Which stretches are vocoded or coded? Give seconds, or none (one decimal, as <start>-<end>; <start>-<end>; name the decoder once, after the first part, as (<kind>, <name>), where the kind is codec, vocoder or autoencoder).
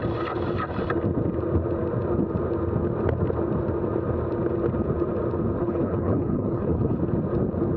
5.6-7.0 (codec, HILCodec)